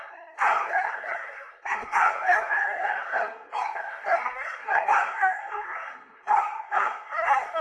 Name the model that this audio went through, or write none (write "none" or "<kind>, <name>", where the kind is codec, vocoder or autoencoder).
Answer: codec, SNAC